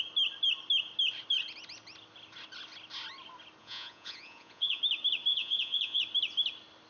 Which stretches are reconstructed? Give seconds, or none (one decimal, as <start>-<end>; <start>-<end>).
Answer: 3.6-4.8; 5.3-6.0